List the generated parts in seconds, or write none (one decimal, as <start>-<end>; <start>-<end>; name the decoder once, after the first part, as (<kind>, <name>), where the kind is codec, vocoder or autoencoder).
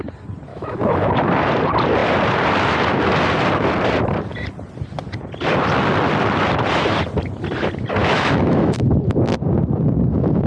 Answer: 0.5-1.1 (autoencoder, DAC-VAE); 8.0-8.8